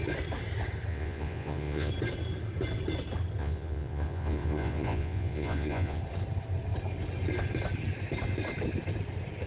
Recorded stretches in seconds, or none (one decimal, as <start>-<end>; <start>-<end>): 0.0-0.9; 1.9-3.4; 6.0-9.5

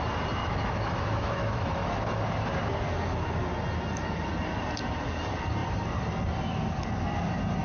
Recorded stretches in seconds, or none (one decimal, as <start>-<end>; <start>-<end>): 0.0-0.4; 2.3-7.6

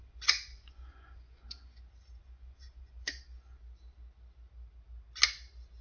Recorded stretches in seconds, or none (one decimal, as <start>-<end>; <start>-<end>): 1.8-2.2; 3.6-5.8

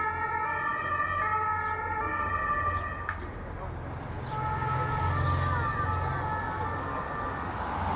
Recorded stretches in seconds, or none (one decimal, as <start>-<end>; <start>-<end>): 0.0-8.0

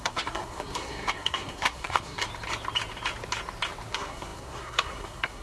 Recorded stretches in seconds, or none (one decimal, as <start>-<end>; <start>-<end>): 2.3-3.9

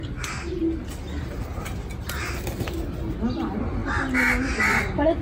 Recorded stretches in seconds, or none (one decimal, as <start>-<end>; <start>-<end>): 0.0-5.2

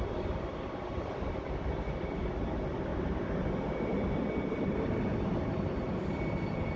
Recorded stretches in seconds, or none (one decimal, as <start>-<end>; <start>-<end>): 0.0-6.8